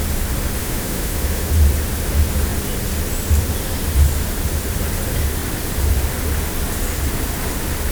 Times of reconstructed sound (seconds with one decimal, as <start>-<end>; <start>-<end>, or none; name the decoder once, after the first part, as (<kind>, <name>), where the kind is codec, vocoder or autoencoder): 0.6-1.5 (autoencoder, DAC-VAE)